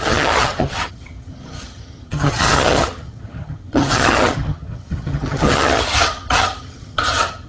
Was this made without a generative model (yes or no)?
no